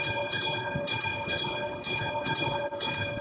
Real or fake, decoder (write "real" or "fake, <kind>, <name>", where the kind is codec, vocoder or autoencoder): fake, codec, HILCodec